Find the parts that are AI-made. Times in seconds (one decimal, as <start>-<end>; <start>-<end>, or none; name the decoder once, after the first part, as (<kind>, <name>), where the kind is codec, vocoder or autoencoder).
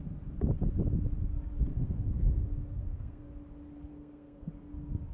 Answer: 1.7-3.2 (codec, SNAC); 3.9-4.5